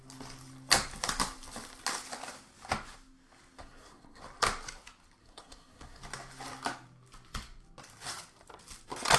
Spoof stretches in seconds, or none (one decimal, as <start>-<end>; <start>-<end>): 3.6-4.2; 5.2-6.0